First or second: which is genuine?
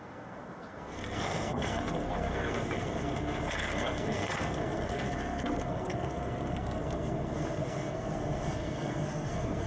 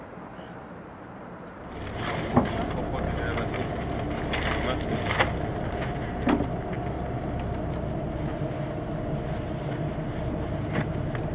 second